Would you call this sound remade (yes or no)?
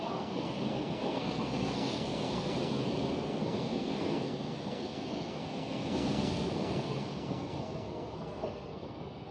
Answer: yes